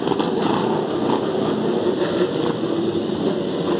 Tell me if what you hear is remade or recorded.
recorded